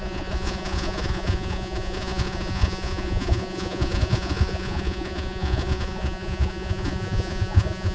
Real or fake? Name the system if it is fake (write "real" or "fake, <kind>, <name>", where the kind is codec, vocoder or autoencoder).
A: fake, vocoder, Vocos